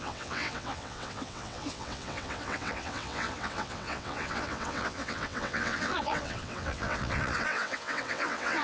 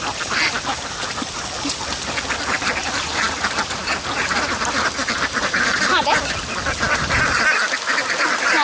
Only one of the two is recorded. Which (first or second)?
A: second